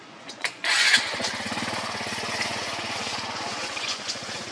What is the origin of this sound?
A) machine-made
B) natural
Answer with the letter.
A